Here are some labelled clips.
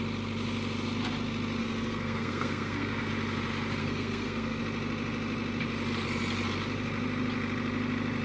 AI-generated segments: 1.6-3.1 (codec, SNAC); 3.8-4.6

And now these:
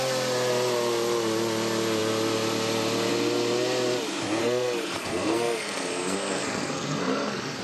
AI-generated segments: 4.4-7.6 (codec, SNAC)

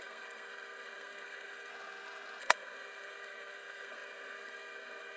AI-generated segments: 0.0-1.7 (codec, SNAC); 2.4-5.2

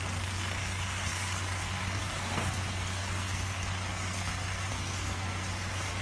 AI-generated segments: 0.0-6.0 (codec, SNAC)

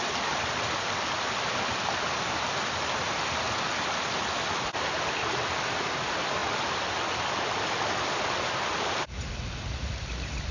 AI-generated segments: none

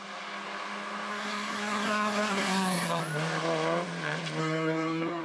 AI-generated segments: 1.1-3.0 (codec, SNAC); 4.4-5.2